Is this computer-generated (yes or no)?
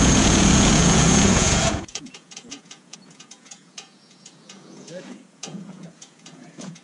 yes